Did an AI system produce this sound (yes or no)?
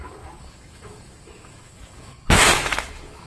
yes